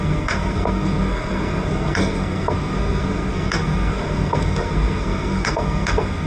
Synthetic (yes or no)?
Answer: yes